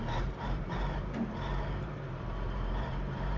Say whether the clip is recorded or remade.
remade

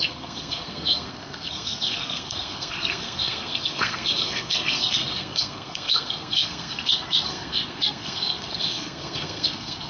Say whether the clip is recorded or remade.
remade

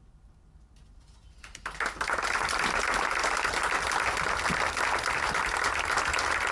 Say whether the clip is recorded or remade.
recorded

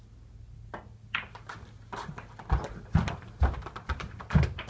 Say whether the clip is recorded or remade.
recorded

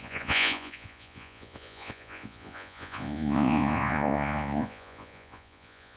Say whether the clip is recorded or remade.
remade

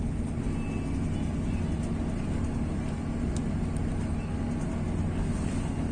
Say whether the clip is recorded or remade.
recorded